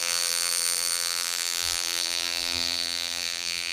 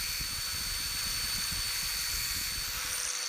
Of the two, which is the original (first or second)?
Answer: second